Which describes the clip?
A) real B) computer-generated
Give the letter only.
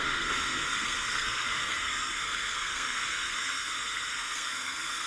B